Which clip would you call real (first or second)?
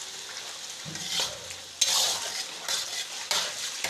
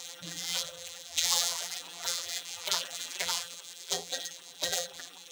first